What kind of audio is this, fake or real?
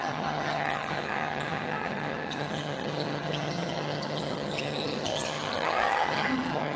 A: fake